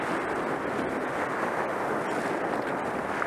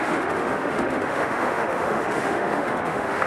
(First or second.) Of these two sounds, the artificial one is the second